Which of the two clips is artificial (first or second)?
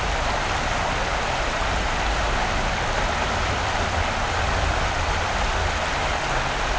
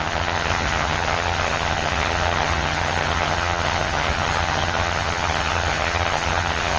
second